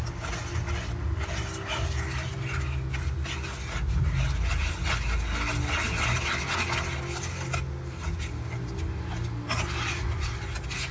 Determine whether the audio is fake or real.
real